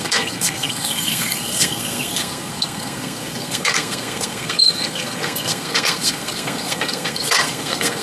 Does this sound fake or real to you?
fake